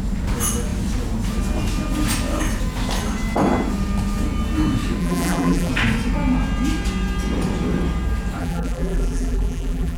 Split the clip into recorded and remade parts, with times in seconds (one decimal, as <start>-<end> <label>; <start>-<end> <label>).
0.0-5.0 recorded; 5.0-5.7 remade; 5.7-8.4 recorded; 8.4-10.0 remade